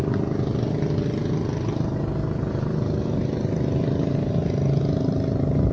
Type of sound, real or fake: real